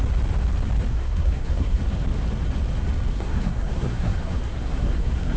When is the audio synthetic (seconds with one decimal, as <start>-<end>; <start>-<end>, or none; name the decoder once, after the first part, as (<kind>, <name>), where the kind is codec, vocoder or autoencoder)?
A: 0.9-1.8 (codec, SNAC); 3.1-5.4